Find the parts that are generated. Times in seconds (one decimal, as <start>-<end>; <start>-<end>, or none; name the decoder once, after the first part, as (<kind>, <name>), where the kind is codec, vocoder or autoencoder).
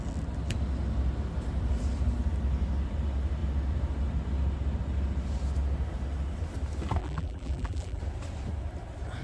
7.0-8.0 (vocoder, BigVGAN v2)